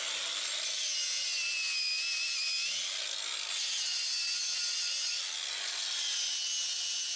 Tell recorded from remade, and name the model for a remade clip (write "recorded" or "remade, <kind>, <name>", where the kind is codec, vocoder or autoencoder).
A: recorded